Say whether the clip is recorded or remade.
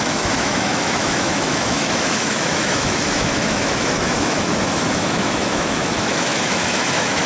remade